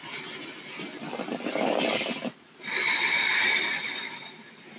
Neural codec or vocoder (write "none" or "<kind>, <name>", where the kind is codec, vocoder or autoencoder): vocoder, BigVGAN v2